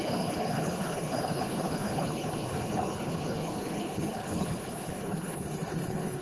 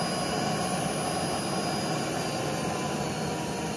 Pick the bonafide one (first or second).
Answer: second